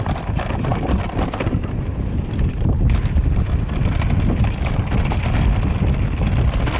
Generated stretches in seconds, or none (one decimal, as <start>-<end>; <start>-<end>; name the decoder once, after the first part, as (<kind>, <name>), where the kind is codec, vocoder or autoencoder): none